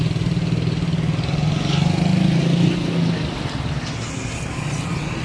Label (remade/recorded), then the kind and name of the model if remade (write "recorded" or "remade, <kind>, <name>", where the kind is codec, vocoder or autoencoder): recorded